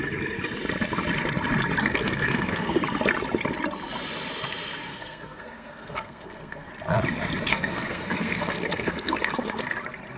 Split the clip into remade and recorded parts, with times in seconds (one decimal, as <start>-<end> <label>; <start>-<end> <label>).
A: 0.0-1.8 recorded; 1.8-2.8 remade; 2.8-4.9 recorded; 4.9-6.7 remade; 6.7-7.5 recorded; 7.5-9.7 remade; 9.7-10.2 recorded

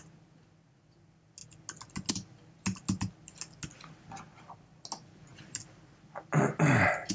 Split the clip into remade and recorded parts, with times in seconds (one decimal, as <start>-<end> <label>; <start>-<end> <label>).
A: 0.0-7.1 recorded